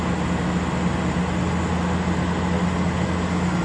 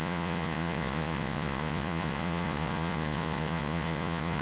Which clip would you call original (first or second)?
first